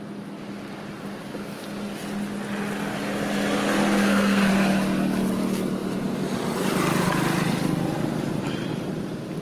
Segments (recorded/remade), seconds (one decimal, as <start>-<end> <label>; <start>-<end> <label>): 0.0-3.9 recorded; 3.9-4.5 remade; 4.5-9.4 recorded